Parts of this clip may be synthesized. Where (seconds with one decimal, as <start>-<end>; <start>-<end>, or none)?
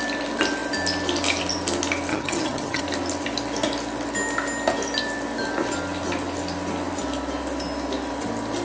2.1-2.8